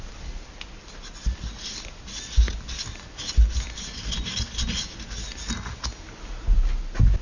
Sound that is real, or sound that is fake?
real